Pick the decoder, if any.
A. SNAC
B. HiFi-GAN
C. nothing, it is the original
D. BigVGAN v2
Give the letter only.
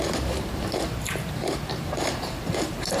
D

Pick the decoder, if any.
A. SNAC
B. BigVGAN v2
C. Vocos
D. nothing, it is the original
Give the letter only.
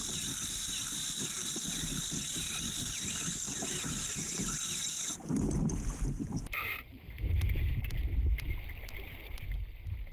D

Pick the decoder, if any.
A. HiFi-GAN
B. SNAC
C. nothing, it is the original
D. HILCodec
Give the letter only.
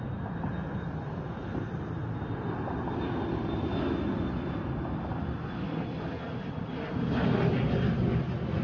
C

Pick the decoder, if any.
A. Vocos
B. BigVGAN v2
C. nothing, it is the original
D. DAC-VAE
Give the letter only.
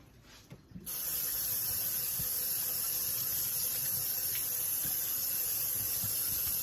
C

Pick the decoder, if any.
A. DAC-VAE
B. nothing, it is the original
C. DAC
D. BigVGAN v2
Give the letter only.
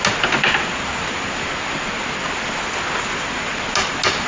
B